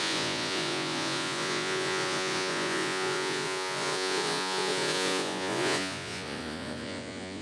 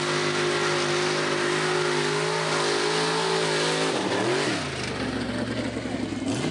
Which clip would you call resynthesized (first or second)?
first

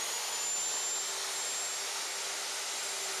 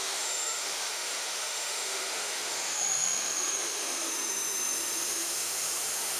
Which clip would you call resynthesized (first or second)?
second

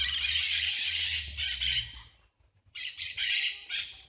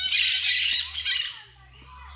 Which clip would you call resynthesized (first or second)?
first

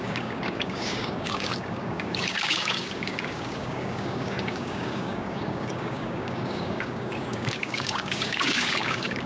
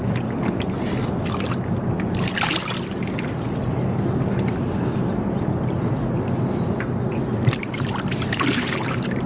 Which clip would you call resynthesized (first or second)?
first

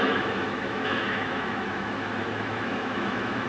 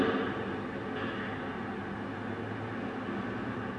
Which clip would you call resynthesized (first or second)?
first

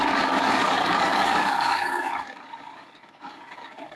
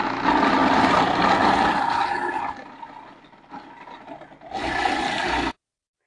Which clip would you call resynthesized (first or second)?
first